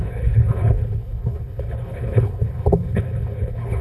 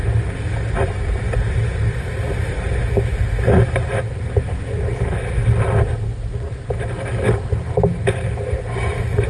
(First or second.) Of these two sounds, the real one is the second